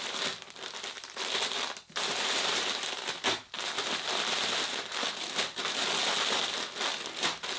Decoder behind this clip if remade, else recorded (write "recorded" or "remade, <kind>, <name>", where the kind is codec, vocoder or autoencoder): recorded